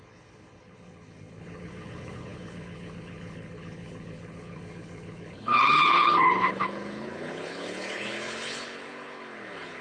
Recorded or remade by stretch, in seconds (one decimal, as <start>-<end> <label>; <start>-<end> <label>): 0.0-9.8 remade